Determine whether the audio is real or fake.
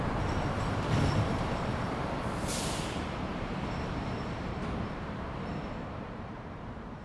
fake